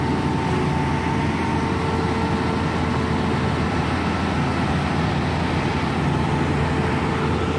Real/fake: real